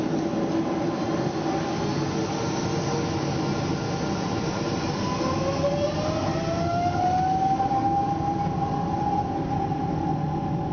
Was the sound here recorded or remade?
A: recorded